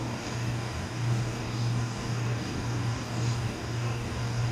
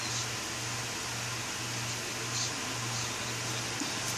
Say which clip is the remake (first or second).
first